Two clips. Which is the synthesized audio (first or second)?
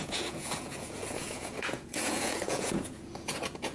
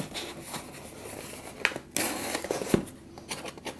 first